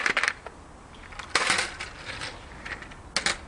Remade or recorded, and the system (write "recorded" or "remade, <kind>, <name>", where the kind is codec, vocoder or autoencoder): recorded